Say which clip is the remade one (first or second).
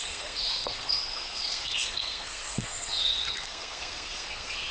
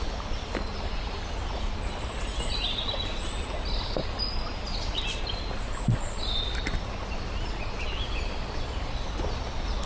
first